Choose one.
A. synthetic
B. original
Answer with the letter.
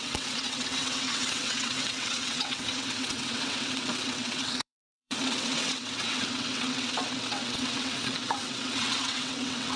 A